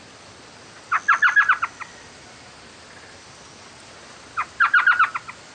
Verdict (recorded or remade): recorded